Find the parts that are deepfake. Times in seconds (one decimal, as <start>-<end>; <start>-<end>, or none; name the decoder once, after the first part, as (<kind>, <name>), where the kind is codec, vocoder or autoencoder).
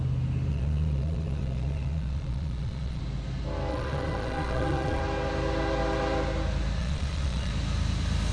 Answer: 0.5-3.0 (vocoder, Vocos); 3.7-5.0; 6.8-7.5